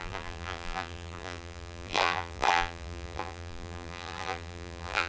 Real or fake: fake